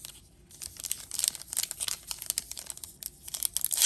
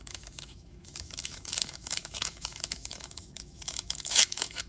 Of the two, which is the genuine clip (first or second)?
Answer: first